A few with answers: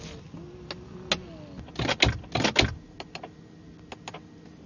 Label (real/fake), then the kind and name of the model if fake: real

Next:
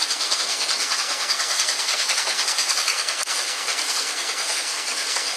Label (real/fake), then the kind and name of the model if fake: fake, codec, SNAC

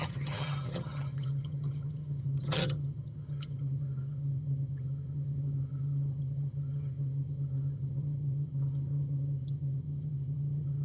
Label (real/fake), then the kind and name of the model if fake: fake, vocoder, HiFi-GAN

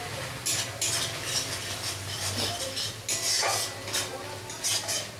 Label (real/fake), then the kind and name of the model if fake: real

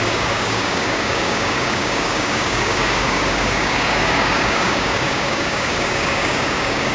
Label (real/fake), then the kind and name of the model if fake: fake, codec, DAC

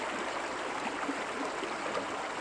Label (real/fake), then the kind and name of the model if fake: fake, vocoder, BigVGAN v2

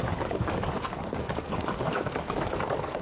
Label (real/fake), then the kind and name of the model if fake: fake, codec, DAC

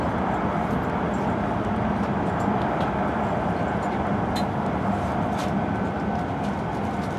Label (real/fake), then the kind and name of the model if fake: real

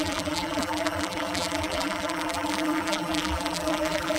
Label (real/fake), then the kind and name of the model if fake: fake, vocoder, BigVGAN v2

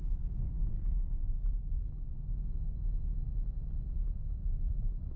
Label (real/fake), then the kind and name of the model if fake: real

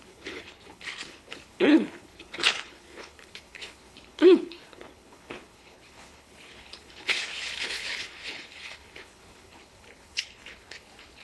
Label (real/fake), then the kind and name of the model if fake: fake, codec, HILCodec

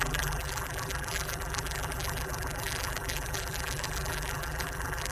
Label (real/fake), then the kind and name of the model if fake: fake, vocoder, BigVGAN v2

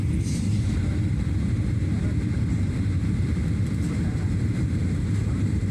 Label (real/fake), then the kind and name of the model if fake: fake, vocoder, BigVGAN v2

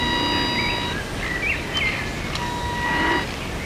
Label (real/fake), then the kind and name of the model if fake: real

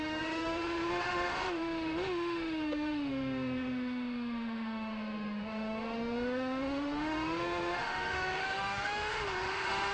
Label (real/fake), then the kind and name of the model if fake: fake, autoencoder, DAC-VAE